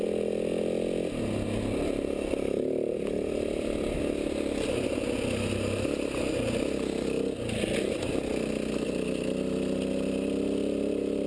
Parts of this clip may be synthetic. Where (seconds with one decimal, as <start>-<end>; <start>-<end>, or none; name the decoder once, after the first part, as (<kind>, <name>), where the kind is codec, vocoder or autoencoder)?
none